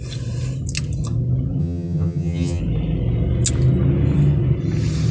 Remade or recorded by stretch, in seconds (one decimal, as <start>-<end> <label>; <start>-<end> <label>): 0.0-1.6 recorded; 1.6-2.6 remade; 2.6-5.1 recorded